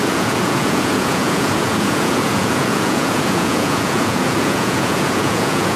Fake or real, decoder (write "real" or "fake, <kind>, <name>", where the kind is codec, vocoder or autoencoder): fake, vocoder, Vocos